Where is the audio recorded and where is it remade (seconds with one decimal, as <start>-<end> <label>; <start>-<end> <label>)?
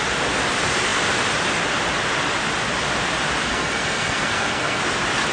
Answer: 0.0-3.5 recorded; 3.5-4.8 remade; 4.8-5.3 recorded